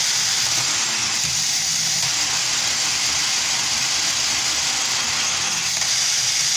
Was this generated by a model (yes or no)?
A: no